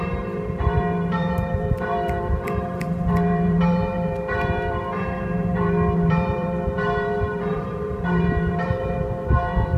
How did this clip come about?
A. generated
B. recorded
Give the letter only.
A